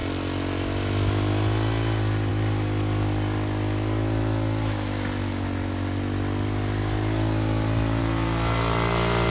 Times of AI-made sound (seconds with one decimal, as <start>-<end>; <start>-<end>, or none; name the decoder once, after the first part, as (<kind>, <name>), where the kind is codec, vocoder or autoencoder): none

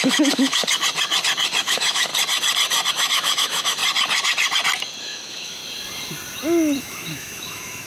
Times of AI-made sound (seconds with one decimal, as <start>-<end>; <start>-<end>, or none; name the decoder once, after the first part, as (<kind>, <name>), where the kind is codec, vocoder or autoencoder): 0.0-0.6 (autoencoder, DAC-VAE); 1.6-2.1; 2.9-3.8; 5.0-5.6; 6.8-7.9

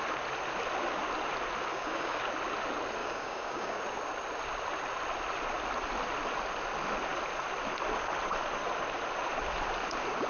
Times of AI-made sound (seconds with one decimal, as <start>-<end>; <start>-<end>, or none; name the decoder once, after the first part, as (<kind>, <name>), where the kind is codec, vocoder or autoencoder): 1.7-2.2 (codec, DAC); 3.0-3.8

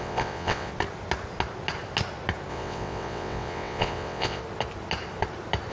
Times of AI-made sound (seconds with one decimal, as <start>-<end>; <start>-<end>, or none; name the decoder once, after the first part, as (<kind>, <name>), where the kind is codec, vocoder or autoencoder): 0.0-0.7 (vocoder, WaveNeXt); 2.5-4.4

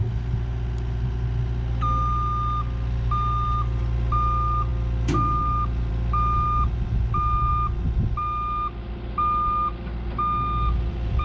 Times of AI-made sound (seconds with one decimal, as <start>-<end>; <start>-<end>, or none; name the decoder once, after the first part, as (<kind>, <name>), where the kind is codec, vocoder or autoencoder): none